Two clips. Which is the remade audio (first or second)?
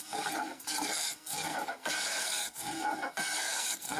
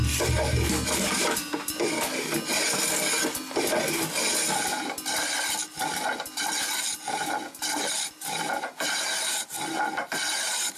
first